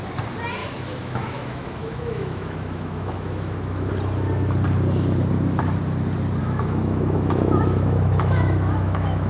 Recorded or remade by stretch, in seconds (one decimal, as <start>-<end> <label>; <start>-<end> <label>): 0.0-0.6 recorded; 0.6-3.9 remade; 3.9-6.4 recorded; 6.4-9.3 remade